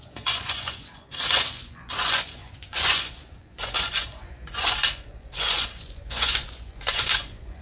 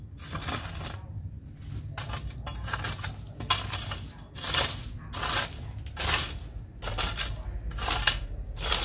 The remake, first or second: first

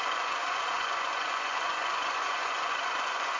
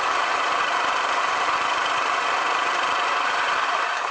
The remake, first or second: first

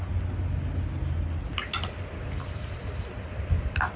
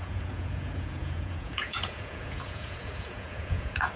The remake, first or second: second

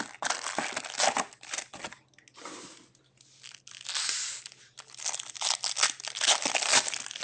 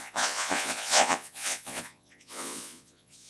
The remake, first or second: second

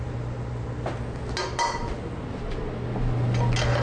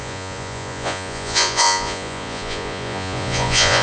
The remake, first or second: second